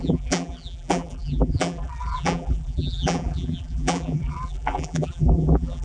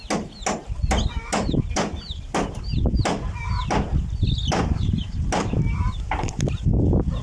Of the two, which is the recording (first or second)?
second